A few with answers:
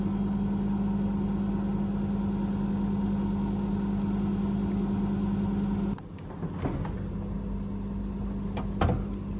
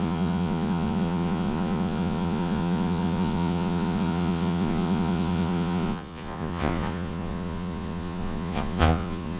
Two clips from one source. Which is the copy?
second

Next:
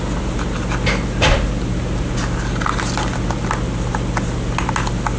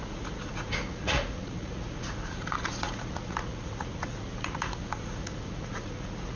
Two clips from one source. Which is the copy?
second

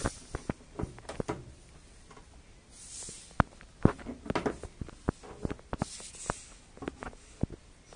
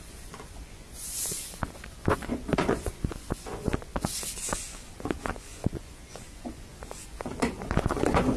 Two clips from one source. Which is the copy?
second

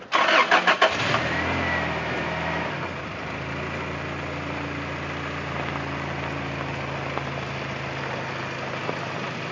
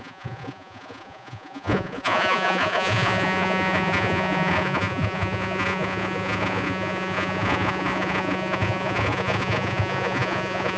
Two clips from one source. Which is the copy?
second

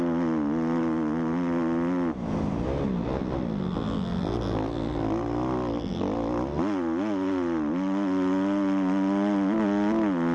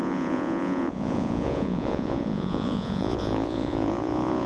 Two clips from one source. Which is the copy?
second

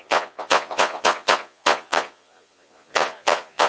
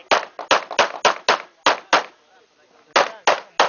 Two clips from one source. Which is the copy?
first